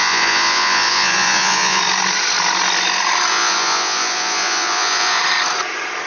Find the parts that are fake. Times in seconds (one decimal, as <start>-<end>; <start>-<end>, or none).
0.0-1.8; 3.3-5.2